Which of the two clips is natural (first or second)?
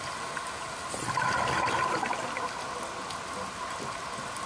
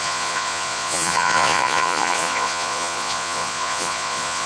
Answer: first